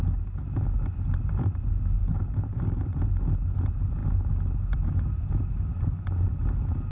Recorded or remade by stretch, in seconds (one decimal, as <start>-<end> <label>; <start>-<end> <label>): 0.0-6.9 recorded